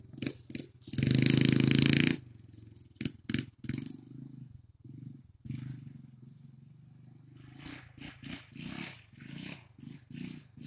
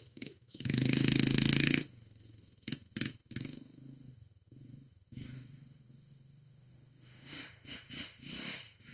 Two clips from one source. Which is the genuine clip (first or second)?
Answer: first